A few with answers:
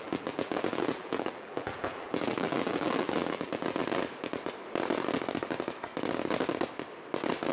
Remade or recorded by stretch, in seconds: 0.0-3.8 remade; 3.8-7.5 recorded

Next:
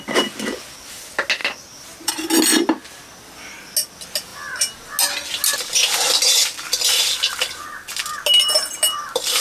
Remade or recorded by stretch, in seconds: 0.0-1.4 recorded; 1.4-2.1 remade; 2.1-9.4 recorded

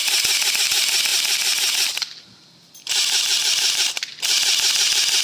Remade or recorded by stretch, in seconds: 0.0-1.1 recorded; 1.1-4.2 remade; 4.2-5.2 recorded

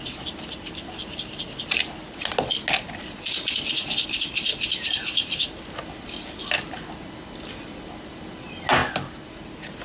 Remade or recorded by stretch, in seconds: 0.0-4.5 recorded; 4.5-5.6 remade; 5.6-9.8 recorded

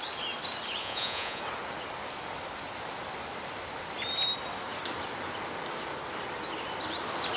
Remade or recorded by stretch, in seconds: 0.0-0.8 recorded; 0.8-1.4 remade; 1.4-7.4 recorded

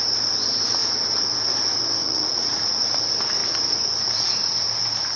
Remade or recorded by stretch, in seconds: 0.0-2.0 recorded; 2.0-3.0 remade; 3.0-5.2 recorded

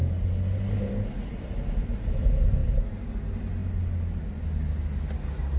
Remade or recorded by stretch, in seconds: 0.0-5.6 recorded